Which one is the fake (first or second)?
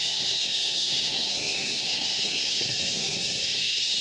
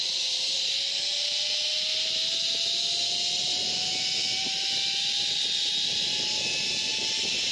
first